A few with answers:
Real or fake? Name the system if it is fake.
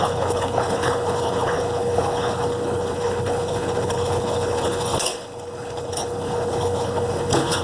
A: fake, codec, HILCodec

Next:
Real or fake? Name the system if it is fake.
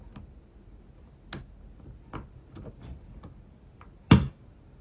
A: real